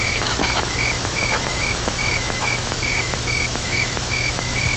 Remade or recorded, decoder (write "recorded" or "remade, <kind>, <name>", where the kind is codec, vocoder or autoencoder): remade, autoencoder, DAC-VAE